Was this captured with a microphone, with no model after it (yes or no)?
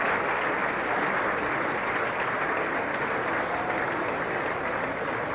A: yes